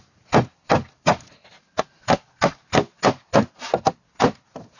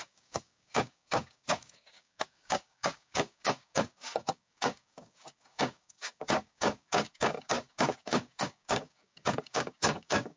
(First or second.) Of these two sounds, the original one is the first